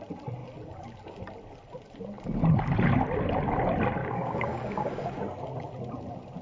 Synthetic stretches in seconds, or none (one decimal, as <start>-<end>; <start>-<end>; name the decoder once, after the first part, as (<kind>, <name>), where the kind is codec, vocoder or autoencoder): 4.0-5.2 (codec, DAC)